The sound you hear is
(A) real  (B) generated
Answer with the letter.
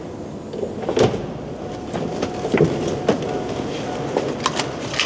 A